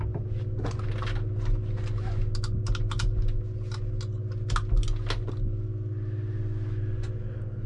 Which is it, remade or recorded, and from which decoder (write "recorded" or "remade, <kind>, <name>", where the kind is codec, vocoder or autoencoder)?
recorded